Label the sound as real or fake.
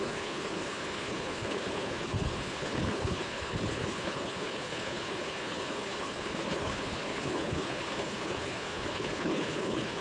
fake